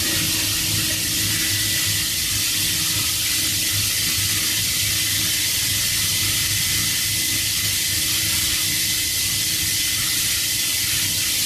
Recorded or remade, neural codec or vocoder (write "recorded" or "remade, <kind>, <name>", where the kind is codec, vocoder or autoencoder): recorded